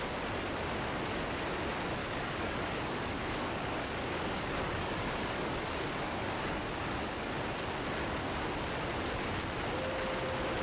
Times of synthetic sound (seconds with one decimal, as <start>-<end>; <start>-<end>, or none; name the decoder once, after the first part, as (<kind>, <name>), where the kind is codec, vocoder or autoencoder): 2.0-7.3 (codec, DAC)